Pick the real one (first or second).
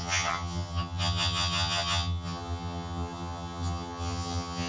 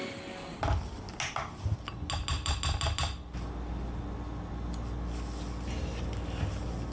second